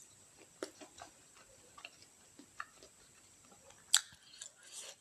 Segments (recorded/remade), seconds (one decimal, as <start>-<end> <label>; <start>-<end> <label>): 0.0-5.0 recorded